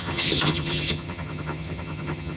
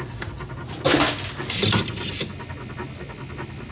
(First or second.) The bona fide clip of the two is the second